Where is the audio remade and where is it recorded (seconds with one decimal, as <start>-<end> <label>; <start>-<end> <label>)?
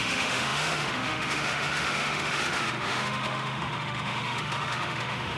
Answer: 0.0-5.4 remade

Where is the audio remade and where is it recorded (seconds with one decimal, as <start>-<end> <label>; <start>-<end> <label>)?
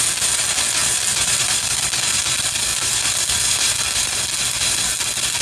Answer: 0.0-0.8 recorded; 0.8-1.8 remade; 1.8-2.7 recorded; 2.7-4.1 remade; 4.1-5.4 recorded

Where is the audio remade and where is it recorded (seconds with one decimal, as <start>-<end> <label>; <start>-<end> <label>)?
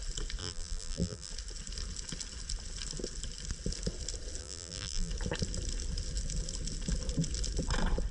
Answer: 0.0-0.4 recorded; 0.4-1.3 remade; 1.3-4.4 recorded; 4.4-5.1 remade; 5.1-8.1 recorded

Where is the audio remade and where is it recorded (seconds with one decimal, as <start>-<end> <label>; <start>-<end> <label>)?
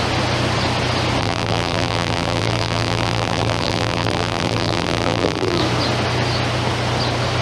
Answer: 0.0-1.2 recorded; 1.2-5.6 remade; 5.6-7.4 recorded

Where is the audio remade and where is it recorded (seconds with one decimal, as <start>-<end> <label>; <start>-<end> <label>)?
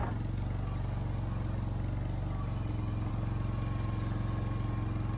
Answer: 0.0-5.2 recorded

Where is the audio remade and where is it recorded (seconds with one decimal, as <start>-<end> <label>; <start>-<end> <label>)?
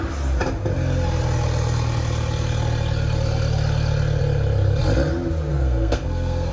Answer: 0.0-5.5 recorded; 5.5-6.5 remade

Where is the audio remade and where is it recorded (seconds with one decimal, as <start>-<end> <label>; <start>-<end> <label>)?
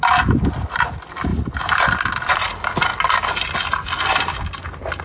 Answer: 0.0-1.3 recorded; 1.3-2.3 remade; 2.3-5.0 recorded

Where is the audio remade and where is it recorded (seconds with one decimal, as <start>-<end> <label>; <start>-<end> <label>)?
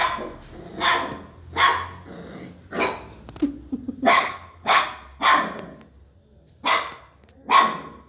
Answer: 0.0-4.1 recorded; 4.1-4.8 remade; 4.8-8.1 recorded